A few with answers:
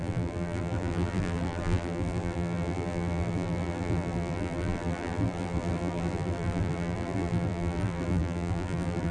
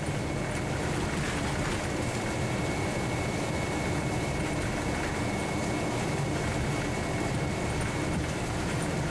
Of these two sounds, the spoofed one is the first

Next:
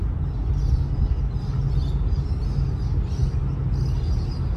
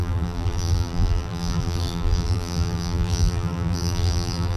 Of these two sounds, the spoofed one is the second